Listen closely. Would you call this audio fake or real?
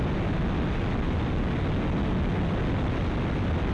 real